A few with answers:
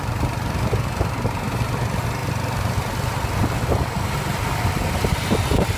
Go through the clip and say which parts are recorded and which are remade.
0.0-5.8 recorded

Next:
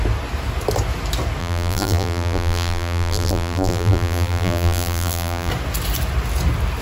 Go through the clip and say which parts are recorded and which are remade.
0.0-1.4 recorded; 1.4-5.5 remade; 5.5-6.8 recorded

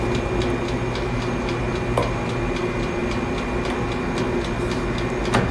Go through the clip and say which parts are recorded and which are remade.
0.0-5.5 recorded